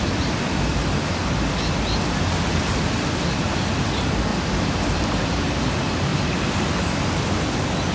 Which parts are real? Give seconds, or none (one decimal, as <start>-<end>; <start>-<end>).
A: 0.0-0.7; 1.2-4.3; 5.0-6.1; 7.4-7.9